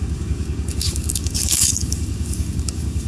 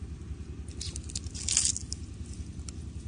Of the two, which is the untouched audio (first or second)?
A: second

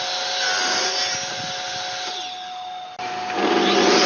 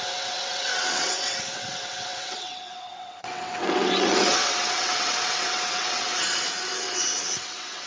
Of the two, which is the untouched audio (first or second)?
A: first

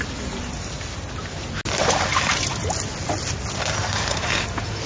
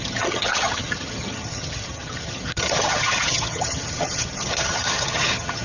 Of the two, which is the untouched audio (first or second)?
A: first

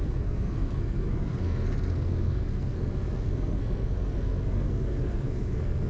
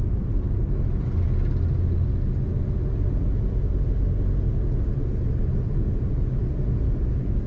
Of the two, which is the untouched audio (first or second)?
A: second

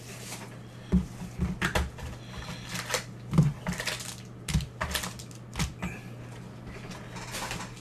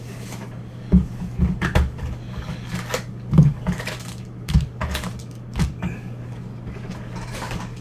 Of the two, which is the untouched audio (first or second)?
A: first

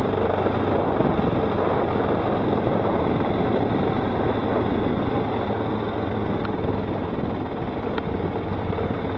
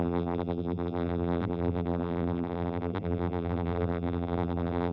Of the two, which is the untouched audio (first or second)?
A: first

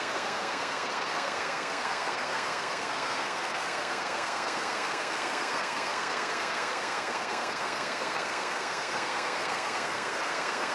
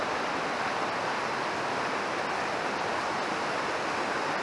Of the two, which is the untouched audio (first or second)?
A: second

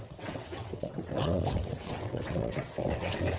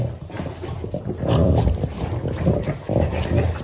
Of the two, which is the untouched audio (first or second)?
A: second